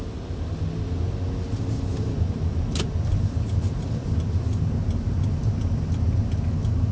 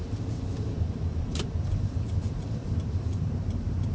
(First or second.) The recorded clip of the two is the first